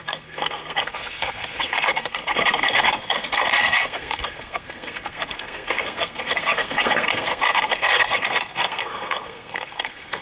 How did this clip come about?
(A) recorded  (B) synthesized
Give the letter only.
B